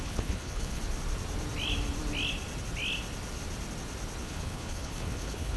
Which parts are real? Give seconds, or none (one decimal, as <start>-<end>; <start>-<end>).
0.8-4.2

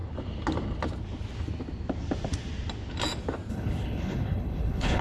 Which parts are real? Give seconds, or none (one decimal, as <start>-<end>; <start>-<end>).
0.0-3.5

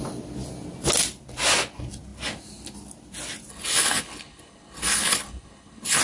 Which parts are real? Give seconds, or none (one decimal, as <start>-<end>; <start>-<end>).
0.0-3.5

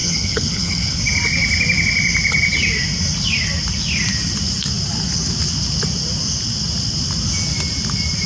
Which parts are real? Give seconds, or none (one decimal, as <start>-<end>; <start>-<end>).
1.0-8.3